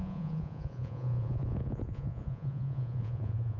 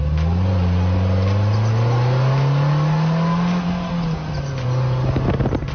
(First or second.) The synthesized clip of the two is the first